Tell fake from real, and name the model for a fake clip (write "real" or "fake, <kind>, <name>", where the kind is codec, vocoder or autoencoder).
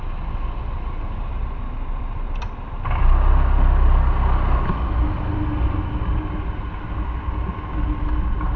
real